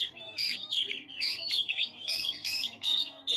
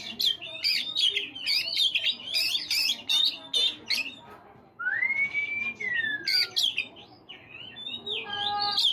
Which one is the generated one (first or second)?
first